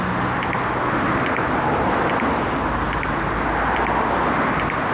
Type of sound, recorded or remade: recorded